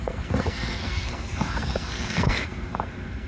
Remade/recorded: remade